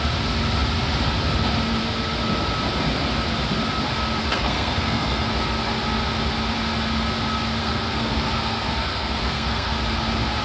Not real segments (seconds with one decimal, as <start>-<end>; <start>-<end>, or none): 4.2-5.3; 7.6-9.7